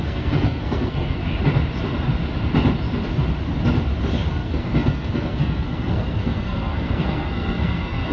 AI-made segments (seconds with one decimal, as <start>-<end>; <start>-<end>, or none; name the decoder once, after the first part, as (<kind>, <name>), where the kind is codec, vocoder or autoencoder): 0.0-1.2 (codec, SNAC); 4.3-8.1